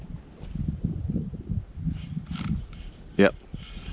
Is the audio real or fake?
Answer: real